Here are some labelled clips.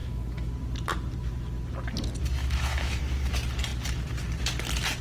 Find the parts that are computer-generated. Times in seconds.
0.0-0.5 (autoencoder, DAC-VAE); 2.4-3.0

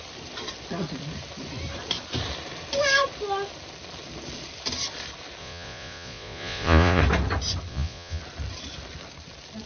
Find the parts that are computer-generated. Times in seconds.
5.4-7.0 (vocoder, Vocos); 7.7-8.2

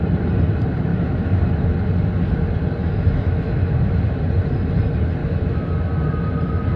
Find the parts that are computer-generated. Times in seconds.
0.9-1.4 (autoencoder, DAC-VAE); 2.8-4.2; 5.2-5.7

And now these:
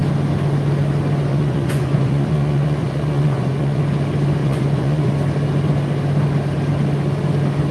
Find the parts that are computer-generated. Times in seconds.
1.3-3.8 (vocoder, Vocos); 4.4-5.1

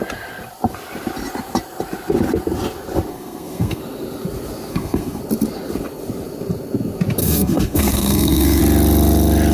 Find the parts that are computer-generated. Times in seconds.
3.1-3.8 (codec, SNAC); 4.7-5.2; 7.2-8.6

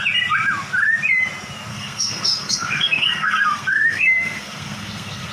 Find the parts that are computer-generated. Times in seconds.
1.7-5.3 (codec, SNAC)

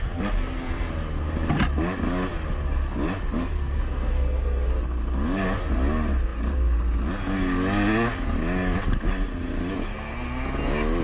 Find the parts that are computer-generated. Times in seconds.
3.4-4.7 (codec, SNAC)